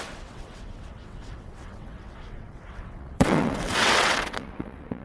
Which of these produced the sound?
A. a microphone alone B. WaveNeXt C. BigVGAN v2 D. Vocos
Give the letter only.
B